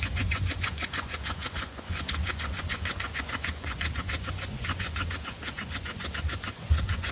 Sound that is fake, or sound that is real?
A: fake